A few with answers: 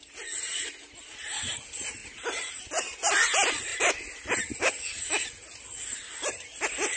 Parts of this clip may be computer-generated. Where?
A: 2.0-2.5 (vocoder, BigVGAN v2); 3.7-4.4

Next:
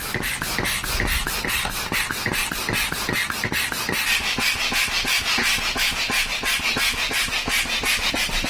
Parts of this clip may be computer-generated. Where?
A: 5.3-6.3 (vocoder, BigVGAN v2)

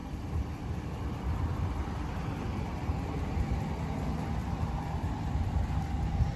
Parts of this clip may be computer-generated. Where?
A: 0.0-3.8 (vocoder, BigVGAN v2); 4.4-6.0

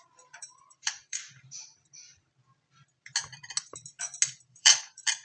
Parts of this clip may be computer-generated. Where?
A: 0.0-1.3 (vocoder, BigVGAN v2); 4.4-5.2

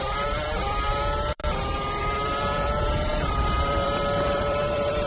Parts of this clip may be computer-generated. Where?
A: 0.0-1.4 (vocoder, BigVGAN v2); 2.0-5.1

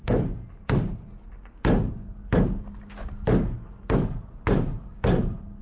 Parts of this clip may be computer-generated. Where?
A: 1.5-2.3 (vocoder, BigVGAN v2); 4.9-5.6

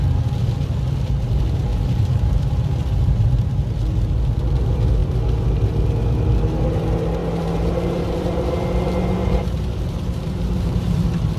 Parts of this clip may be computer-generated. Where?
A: 1.7-2.5 (vocoder, BigVGAN v2); 7.2-8.5; 9.2-11.4